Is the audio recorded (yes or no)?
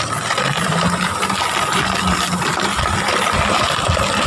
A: no